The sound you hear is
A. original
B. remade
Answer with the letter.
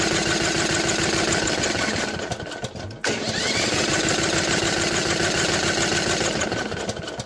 A